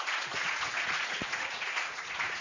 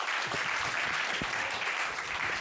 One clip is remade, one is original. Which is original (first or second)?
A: second